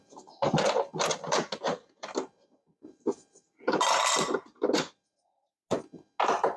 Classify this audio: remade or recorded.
recorded